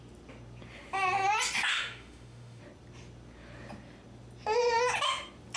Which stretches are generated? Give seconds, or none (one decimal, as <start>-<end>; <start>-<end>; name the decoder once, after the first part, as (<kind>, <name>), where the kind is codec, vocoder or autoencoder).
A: 1.7-2.6 (autoencoder, DAC-VAE)